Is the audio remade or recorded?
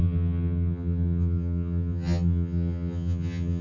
remade